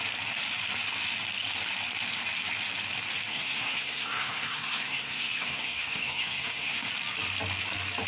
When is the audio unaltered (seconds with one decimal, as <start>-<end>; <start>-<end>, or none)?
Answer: 0.0-3.3; 6.9-8.1